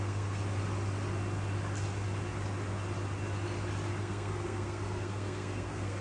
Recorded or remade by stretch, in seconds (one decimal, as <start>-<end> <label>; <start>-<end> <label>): 0.0-0.4 remade; 0.4-4.0 recorded; 4.0-6.0 remade